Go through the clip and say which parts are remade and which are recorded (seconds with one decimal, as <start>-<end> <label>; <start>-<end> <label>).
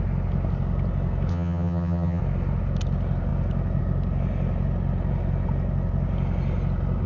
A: 0.0-1.3 recorded; 1.3-2.2 remade; 2.2-7.1 recorded